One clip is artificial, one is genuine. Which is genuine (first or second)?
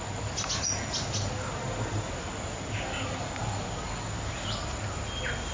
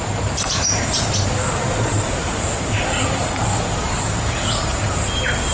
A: first